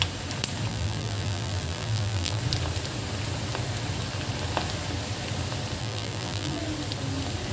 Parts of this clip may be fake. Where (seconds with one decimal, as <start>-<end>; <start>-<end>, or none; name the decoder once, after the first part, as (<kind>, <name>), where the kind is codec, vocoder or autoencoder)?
0.7-2.4 (vocoder, BigVGAN v2); 5.8-6.6